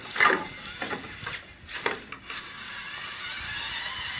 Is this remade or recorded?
recorded